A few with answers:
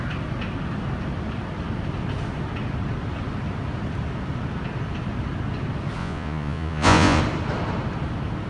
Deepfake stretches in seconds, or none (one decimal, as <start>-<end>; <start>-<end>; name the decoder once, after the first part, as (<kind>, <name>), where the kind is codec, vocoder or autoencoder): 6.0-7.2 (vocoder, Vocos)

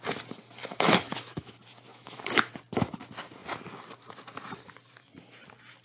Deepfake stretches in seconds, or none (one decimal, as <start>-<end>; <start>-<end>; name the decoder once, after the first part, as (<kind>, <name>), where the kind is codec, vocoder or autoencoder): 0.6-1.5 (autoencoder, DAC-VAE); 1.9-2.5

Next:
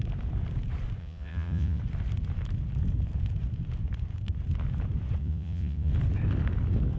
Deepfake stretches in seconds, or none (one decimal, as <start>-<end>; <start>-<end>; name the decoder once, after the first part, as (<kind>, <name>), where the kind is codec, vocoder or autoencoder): 1.0-1.8 (vocoder, Vocos); 5.2-5.9

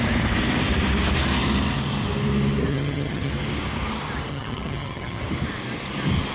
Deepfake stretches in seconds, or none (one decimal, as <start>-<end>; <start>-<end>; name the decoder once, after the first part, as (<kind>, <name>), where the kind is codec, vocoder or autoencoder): 2.7-3.3 (vocoder, HiFi-GAN); 4.3-5.2

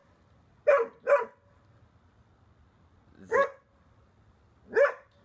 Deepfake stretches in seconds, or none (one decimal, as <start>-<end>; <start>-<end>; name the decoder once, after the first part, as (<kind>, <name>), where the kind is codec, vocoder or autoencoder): none

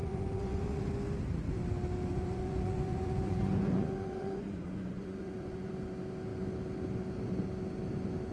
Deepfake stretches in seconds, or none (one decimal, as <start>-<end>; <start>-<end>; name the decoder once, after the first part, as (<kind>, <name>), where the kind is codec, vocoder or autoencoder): 0.0-0.9 (vocoder, Vocos); 2.1-5.7